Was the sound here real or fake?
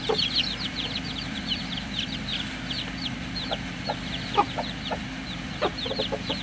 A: real